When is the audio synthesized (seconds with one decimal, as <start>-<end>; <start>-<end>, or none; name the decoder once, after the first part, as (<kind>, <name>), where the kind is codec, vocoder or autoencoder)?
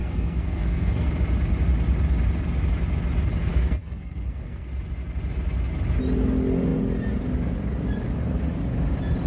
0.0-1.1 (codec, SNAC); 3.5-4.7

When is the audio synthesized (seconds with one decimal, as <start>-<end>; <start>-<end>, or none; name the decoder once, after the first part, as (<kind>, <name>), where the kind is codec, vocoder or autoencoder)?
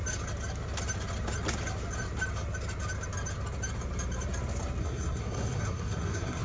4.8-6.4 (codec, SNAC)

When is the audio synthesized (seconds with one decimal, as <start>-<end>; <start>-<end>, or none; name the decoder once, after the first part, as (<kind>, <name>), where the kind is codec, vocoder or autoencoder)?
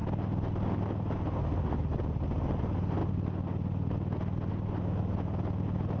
none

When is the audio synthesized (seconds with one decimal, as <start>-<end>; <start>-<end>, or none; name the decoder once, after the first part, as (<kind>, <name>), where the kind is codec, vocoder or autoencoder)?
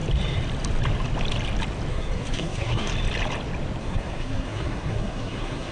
1.9-2.9 (codec, SNAC); 3.8-5.7